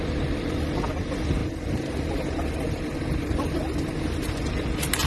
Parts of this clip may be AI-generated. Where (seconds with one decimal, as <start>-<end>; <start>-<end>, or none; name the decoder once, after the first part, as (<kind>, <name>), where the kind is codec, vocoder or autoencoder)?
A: none